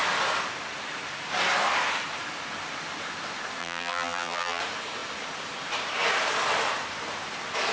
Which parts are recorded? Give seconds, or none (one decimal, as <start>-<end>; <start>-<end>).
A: 0.0-3.6; 4.6-7.7